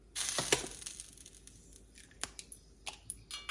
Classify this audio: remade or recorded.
recorded